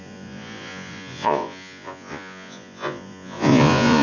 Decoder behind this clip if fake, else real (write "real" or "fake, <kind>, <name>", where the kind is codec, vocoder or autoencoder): fake, vocoder, Vocos